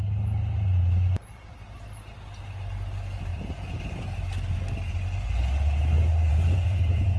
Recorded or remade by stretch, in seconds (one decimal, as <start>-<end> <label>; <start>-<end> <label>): 0.0-3.3 recorded; 3.3-3.8 remade; 3.8-6.3 recorded; 6.3-7.2 remade